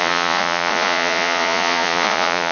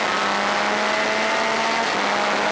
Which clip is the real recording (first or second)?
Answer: second